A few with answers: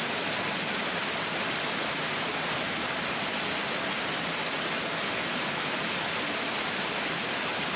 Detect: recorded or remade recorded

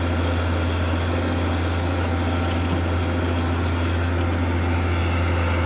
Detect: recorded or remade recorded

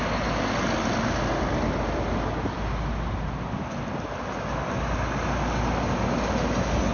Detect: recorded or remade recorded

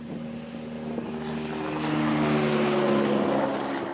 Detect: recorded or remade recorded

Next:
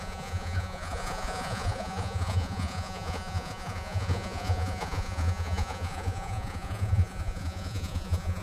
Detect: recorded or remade remade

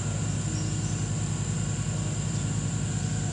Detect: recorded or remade recorded